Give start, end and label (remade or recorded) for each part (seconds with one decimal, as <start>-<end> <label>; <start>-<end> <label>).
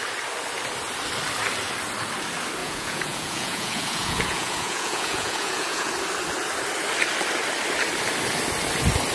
0.0-2.6 recorded; 2.6-5.9 remade; 5.9-9.1 recorded